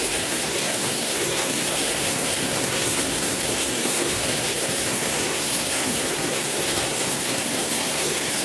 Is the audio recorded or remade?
remade